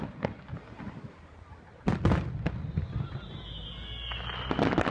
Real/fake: real